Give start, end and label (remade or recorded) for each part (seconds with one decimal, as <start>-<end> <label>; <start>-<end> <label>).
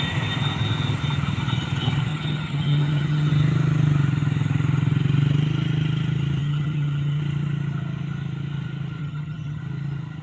0.0-2.1 recorded; 2.1-3.3 remade; 3.3-6.4 recorded; 6.4-7.2 remade; 7.2-9.0 recorded; 9.0-9.6 remade; 9.6-10.2 recorded